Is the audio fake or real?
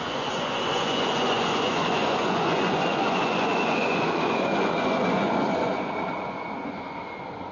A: fake